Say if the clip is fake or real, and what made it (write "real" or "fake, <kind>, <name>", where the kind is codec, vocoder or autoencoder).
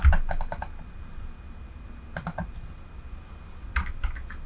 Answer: real